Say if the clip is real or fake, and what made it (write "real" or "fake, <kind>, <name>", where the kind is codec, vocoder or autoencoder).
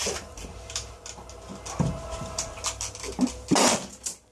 real